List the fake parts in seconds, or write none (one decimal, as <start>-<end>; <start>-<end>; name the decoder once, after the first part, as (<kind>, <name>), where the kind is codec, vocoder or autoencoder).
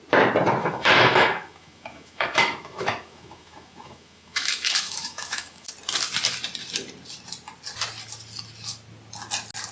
0.6-5.7 (autoencoder, DAC-VAE)